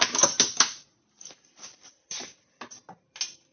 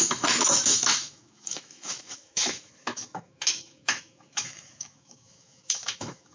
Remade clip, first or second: second